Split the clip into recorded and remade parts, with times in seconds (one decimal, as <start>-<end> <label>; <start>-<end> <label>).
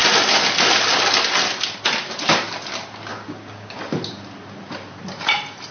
0.0-3.1 recorded; 3.1-3.8 remade; 3.8-5.7 recorded